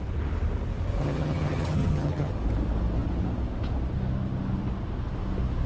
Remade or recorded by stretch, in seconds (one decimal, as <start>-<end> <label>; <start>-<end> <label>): 0.0-1.0 recorded; 1.0-2.3 remade; 2.3-5.7 recorded